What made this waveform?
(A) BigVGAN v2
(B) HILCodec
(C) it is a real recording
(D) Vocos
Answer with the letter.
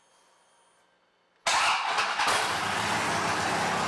C